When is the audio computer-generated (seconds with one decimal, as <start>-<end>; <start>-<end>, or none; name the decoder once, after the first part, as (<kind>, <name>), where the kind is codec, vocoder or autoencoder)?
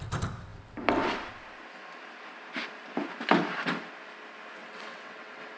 4.6-5.6 (vocoder, WaveNeXt)